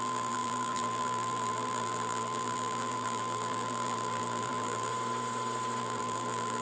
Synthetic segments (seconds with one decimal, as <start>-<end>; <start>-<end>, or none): 0.0-4.9; 5.8-6.6